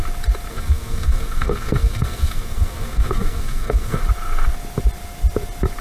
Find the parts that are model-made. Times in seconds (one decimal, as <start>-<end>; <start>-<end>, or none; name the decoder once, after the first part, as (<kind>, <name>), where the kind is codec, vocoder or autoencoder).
0.5-4.0 (codec, SNAC)